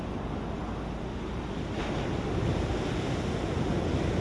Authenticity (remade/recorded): recorded